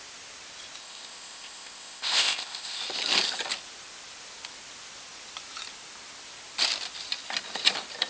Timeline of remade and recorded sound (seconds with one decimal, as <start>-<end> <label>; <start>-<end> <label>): 0.0-0.8 recorded; 0.8-2.8 remade; 2.8-8.1 recorded